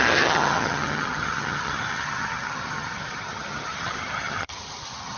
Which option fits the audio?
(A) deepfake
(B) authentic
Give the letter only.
A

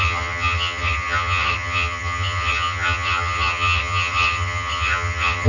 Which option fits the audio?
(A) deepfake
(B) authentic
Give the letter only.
A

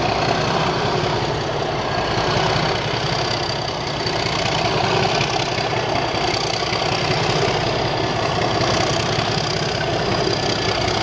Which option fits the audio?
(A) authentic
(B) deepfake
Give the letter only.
A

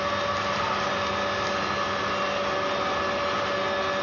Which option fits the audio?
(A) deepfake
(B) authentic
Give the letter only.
B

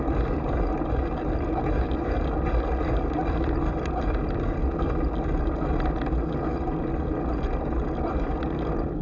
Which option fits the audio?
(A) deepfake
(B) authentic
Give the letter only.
B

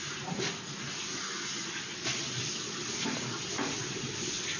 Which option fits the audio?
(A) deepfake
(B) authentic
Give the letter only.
B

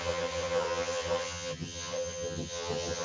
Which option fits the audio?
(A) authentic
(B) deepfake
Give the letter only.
B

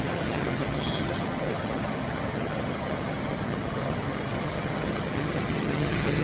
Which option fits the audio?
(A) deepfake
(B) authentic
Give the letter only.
A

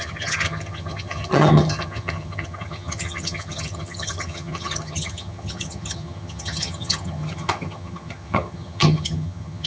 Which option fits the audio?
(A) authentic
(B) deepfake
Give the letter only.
B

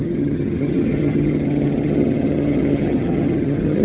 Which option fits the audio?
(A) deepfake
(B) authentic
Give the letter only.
A